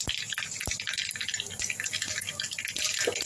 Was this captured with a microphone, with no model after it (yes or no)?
yes